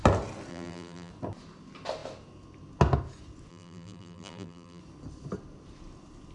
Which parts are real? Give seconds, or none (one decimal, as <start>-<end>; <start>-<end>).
0.0-0.5; 1.1-3.5; 4.8-6.3